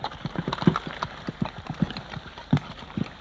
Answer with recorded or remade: recorded